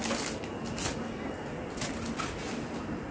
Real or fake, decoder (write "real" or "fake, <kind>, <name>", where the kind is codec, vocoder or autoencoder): real